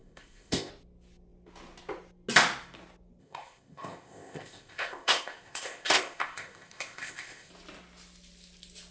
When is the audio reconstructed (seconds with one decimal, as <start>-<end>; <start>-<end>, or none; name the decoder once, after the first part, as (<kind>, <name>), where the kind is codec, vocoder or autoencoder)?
0.0-0.7 (codec, ZipCodec); 3.2-7.5